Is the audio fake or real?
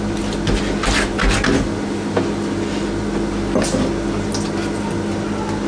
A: real